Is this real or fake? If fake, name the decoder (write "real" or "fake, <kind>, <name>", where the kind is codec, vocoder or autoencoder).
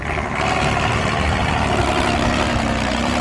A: real